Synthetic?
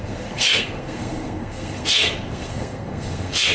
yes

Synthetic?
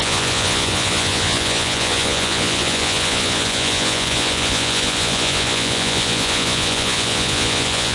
yes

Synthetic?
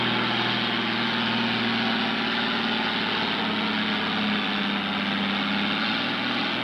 no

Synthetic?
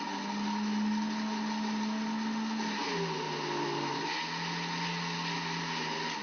no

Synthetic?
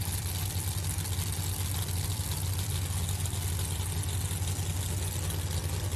no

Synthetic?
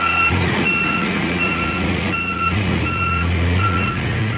yes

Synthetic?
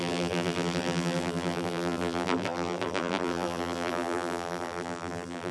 yes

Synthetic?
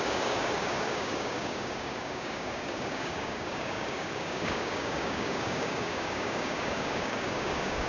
yes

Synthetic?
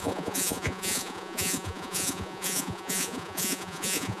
yes